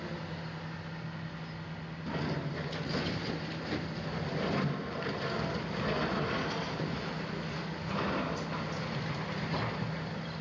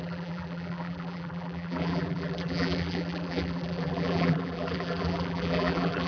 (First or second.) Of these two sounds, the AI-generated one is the second